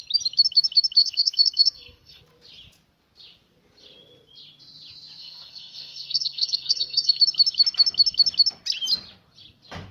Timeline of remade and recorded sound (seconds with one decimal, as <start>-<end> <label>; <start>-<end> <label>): 0.0-1.0 recorded; 1.0-2.2 remade; 2.2-5.2 recorded; 5.2-7.2 remade; 7.2-9.9 recorded

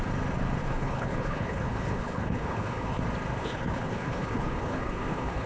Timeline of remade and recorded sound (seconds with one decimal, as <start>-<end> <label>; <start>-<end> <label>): 0.0-0.6 recorded; 0.6-3.0 remade; 3.0-3.4 recorded; 3.4-5.5 remade

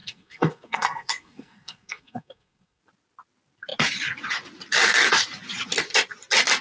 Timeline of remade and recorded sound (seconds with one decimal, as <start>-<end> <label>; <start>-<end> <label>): 0.0-2.8 remade; 2.8-6.6 recorded